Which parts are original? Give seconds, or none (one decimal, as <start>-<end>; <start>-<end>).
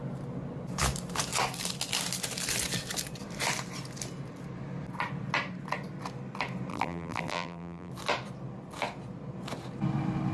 0.0-6.7; 7.9-10.3